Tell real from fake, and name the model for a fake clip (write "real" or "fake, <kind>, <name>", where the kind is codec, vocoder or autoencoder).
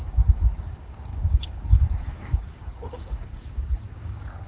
fake, codec, DAC